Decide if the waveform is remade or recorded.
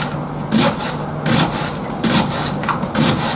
recorded